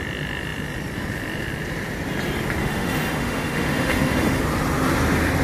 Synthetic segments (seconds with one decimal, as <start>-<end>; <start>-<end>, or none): 2.6-4.4